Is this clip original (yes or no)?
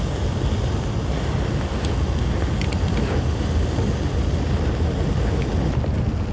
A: yes